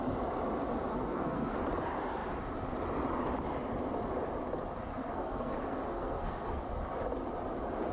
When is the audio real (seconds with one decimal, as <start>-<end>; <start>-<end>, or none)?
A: 0.0-0.9; 1.6-4.9; 6.6-7.9